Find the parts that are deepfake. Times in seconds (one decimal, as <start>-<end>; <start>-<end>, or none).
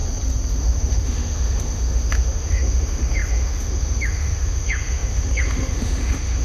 0.5-6.4